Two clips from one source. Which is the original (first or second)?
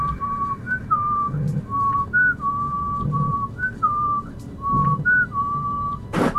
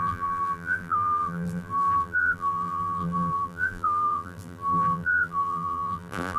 first